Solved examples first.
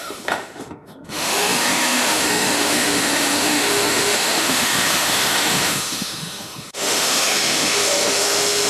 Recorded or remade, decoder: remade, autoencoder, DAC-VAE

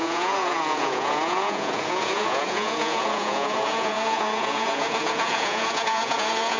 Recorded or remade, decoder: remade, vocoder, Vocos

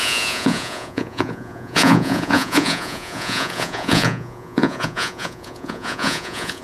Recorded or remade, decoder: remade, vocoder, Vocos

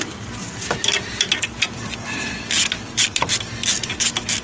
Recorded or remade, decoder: recorded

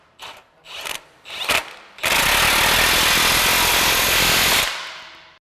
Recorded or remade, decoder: recorded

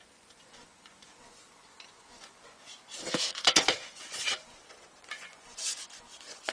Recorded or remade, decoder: remade, vocoder, Vocos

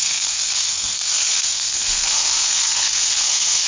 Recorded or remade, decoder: remade, codec, SNAC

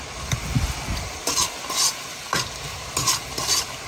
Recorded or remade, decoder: recorded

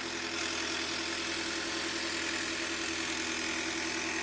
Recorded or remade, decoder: recorded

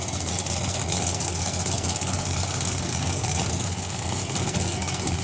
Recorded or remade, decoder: remade, codec, SNAC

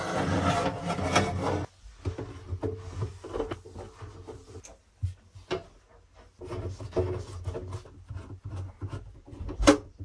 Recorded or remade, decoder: recorded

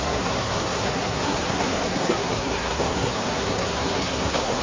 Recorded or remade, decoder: remade, codec, SNAC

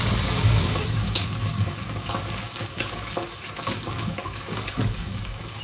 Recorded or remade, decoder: remade, codec, DAC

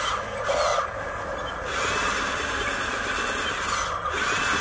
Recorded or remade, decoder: recorded